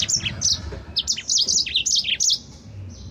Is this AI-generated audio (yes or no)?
no